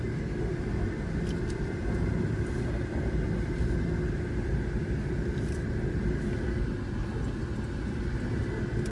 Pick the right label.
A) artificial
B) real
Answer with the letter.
B